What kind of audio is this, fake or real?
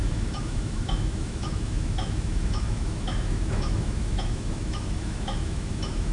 fake